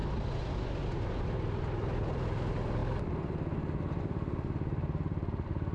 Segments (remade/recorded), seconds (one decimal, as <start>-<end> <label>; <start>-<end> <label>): 0.0-5.7 recorded